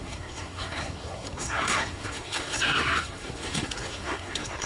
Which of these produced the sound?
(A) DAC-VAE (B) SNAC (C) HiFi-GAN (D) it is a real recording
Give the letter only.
B